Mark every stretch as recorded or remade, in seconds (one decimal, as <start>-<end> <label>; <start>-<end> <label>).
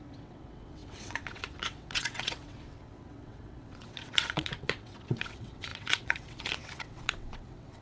0.0-7.8 remade